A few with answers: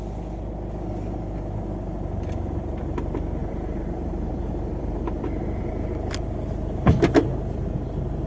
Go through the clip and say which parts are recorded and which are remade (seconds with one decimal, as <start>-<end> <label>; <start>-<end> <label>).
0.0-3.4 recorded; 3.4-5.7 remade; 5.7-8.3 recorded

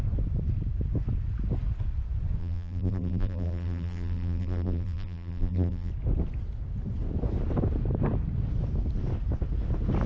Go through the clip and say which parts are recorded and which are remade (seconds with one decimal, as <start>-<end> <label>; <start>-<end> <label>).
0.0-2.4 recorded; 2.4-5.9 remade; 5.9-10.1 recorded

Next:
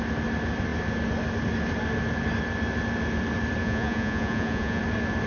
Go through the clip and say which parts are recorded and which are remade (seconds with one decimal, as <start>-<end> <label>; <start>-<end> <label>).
0.0-3.6 recorded; 3.6-4.8 remade; 4.8-5.3 recorded

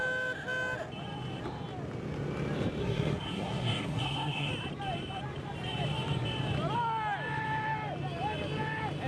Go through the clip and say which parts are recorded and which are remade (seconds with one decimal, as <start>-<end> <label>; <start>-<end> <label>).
0.0-2.8 recorded; 2.8-4.5 remade; 4.5-9.1 recorded

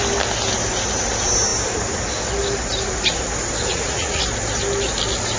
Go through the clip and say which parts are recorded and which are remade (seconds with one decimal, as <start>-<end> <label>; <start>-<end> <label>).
0.0-3.7 recorded; 3.7-4.2 remade; 4.2-5.4 recorded